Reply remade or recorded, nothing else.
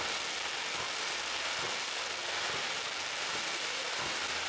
recorded